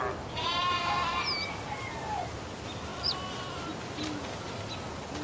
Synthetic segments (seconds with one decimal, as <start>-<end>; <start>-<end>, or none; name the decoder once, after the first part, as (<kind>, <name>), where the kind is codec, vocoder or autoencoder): none